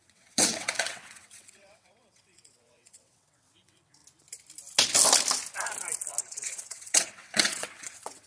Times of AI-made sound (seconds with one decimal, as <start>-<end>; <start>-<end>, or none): 0.0-4.0; 6.2-8.3